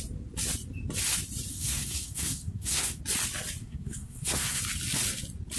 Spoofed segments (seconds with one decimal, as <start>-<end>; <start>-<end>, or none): 1.5-3.0; 3.6-4.6